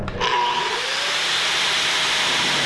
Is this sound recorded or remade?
remade